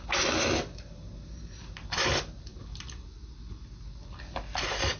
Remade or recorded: recorded